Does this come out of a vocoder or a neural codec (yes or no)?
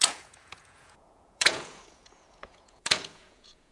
yes